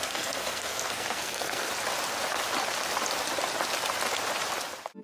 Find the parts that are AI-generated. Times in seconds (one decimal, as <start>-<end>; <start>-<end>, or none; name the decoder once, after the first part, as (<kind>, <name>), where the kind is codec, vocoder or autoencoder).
0.0-1.7 (codec, SNAC)

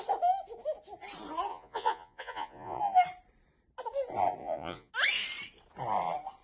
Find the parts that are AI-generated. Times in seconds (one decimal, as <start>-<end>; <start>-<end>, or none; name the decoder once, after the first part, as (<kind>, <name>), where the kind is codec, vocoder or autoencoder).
1.5-2.8 (vocoder, Vocos); 4.4-4.9

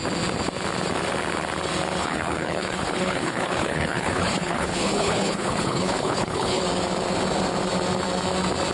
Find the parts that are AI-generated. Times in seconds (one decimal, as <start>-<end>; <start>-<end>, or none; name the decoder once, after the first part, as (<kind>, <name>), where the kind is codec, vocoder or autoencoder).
2.0-6.6 (codec, HILCodec)

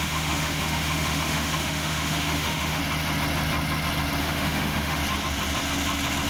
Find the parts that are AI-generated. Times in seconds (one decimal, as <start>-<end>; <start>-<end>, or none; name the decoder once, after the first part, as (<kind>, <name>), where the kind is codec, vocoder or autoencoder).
0.0-2.8 (autoencoder, DAC-VAE); 4.2-5.0

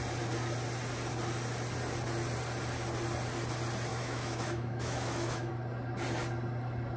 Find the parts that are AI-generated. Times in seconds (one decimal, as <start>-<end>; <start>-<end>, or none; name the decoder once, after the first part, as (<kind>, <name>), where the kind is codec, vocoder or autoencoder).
3.9-5.5 (autoencoder, DAC-VAE)